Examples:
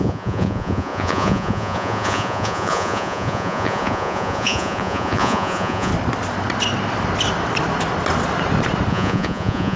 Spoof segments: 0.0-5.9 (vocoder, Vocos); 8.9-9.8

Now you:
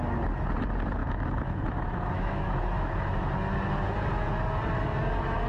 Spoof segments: 1.0-3.3 (autoencoder, DAC-VAE)

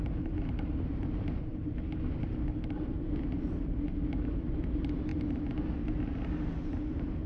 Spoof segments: none

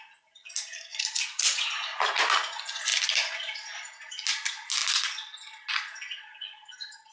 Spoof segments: 0.9-2.1 (vocoder, BigVGAN v2); 4.8-5.7